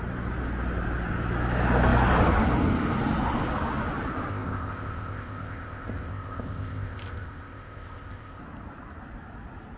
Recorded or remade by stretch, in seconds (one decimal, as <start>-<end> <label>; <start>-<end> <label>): 0.0-4.3 recorded; 4.3-8.4 remade; 8.4-9.8 recorded